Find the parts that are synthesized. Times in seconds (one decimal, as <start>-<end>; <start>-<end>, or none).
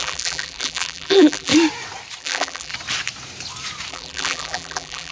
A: 0.0-1.5; 2.2-2.7; 3.9-5.1